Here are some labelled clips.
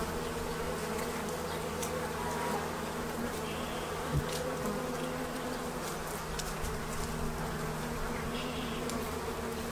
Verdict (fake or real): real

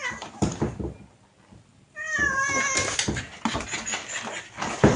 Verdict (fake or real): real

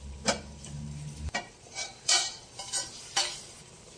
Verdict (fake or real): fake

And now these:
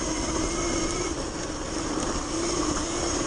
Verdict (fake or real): real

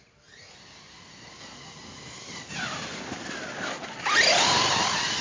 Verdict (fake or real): real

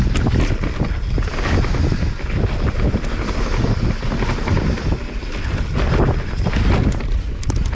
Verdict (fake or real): real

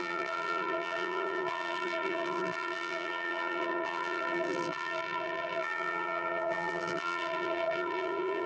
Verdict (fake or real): fake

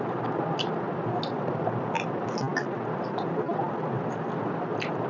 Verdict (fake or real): real